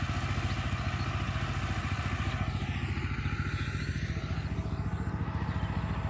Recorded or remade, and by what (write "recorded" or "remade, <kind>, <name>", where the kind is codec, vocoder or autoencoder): recorded